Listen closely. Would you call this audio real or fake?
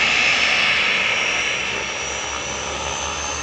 real